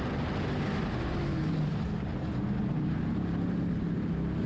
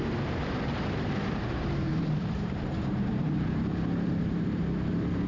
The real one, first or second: first